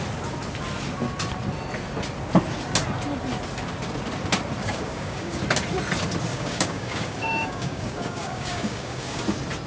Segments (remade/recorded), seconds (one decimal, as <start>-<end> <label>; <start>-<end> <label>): 0.0-4.6 recorded; 4.6-5.4 remade; 5.4-6.3 recorded; 6.3-9.2 remade; 9.2-9.7 recorded